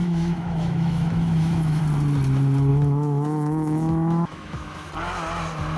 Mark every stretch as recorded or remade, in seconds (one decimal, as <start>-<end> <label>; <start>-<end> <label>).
0.0-1.8 remade; 1.8-2.7 recorded; 2.7-4.9 remade; 4.9-5.8 recorded